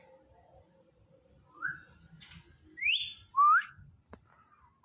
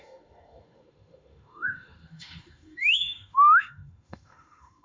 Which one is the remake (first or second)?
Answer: second